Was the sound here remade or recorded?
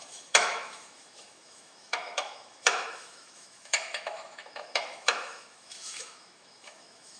remade